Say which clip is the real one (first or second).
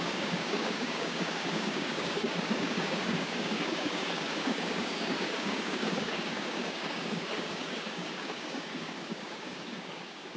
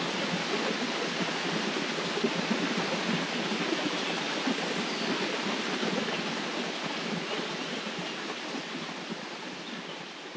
second